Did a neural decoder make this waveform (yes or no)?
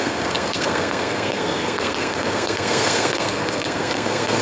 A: yes